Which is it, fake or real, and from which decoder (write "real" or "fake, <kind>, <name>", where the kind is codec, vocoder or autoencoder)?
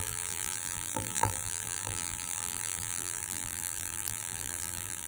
fake, vocoder, BigVGAN v2